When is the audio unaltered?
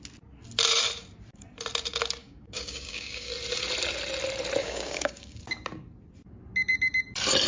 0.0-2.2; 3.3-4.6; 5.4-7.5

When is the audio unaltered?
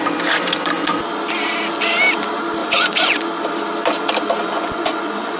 0.0-2.6; 3.2-4.4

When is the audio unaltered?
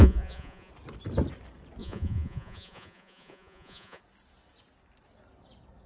0.7-1.8; 4.0-5.9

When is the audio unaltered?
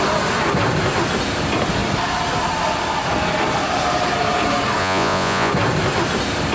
0.0-4.8; 5.5-6.5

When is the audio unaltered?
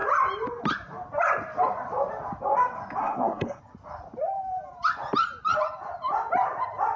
0.0-3.0; 3.6-7.0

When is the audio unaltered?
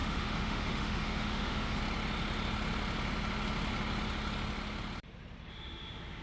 1.8-5.5